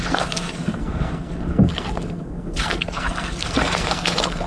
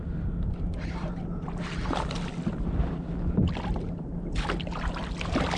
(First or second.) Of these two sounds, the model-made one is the first